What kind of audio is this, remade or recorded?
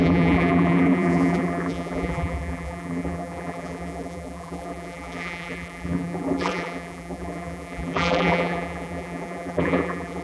remade